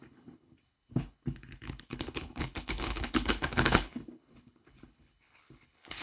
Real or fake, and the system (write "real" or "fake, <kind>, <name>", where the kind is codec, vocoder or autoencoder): fake, codec, HILCodec